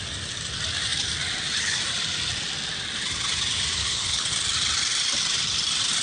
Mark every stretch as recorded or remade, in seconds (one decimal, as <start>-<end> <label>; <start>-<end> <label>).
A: 0.0-3.8 recorded; 3.8-4.3 remade; 4.3-6.0 recorded